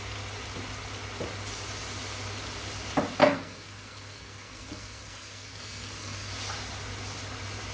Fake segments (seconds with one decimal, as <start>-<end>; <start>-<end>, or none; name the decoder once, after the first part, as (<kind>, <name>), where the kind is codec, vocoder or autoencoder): 3.2-6.3 (codec, SNAC)